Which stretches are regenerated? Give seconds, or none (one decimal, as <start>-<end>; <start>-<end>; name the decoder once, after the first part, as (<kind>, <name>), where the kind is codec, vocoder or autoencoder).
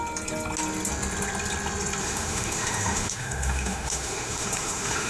2.0-5.1 (autoencoder, DAC-VAE)